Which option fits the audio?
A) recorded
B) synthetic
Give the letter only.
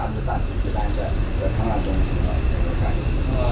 A